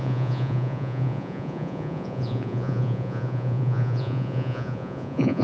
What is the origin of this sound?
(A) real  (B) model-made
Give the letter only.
B